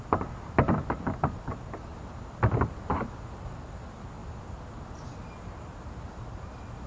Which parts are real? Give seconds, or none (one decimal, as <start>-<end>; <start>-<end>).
0.0-6.9